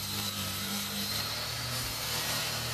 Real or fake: fake